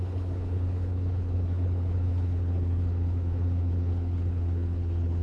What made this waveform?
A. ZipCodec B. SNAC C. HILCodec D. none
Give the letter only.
C